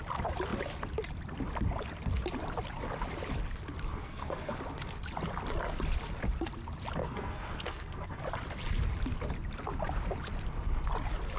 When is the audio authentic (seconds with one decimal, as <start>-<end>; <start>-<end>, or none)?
0.0-3.9; 4.6-7.0; 8.2-11.4

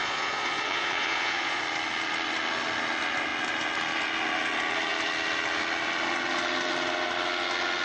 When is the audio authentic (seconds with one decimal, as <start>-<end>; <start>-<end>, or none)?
1.6-7.8

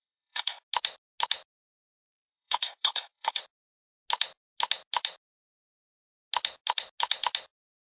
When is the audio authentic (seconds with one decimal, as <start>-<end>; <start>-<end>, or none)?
0.6-1.9; 3.4-7.9

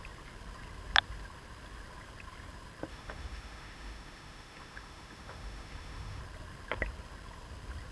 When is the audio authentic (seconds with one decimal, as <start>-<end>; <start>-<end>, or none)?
0.0-2.9; 6.2-7.9